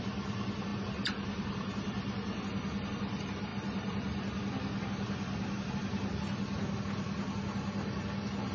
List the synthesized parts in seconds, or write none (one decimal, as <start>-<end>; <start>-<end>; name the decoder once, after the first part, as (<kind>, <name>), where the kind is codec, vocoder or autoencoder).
none